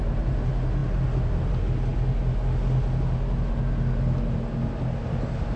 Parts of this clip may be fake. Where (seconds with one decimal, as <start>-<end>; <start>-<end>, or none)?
none